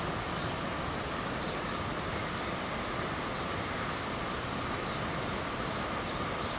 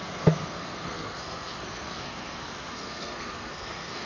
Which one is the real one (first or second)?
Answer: first